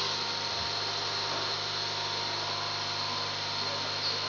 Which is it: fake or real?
real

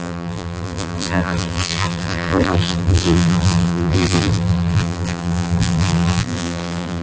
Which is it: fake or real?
fake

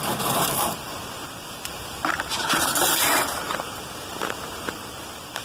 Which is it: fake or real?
fake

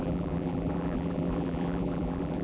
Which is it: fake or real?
fake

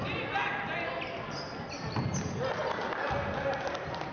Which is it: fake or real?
real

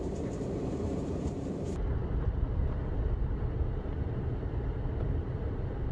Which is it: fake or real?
fake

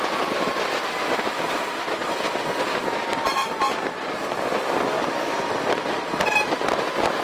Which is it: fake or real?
real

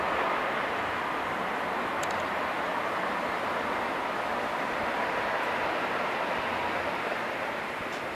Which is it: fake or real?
real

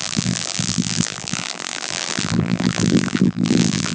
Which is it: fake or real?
fake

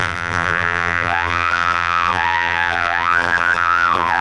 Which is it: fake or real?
fake